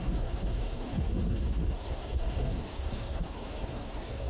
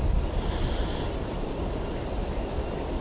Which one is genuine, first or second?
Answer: second